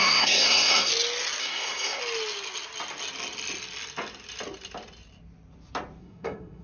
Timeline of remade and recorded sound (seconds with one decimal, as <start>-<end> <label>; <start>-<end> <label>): 0.0-0.9 remade; 0.9-1.4 recorded; 1.4-2.0 remade; 2.0-6.0 recorded; 6.0-6.6 remade